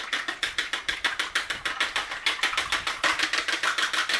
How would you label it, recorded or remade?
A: recorded